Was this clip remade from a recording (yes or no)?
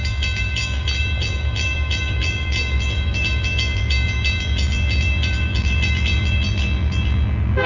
yes